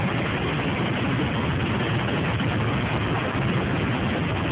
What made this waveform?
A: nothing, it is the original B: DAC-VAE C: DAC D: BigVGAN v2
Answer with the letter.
A